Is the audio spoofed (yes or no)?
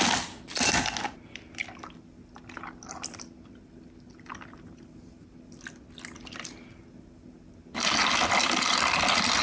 no